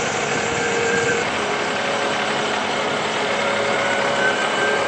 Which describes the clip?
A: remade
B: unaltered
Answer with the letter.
A